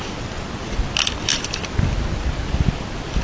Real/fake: real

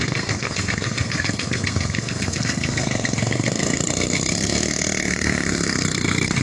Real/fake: fake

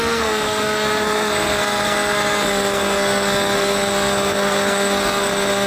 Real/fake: fake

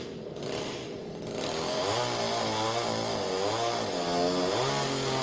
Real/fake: real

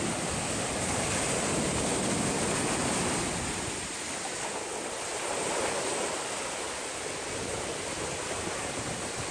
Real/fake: real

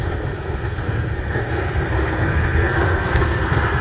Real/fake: fake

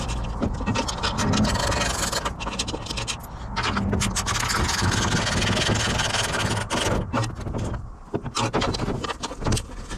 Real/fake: real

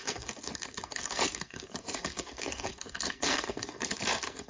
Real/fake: fake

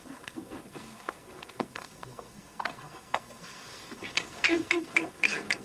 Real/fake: fake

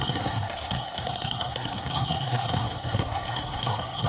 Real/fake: fake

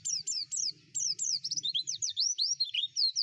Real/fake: real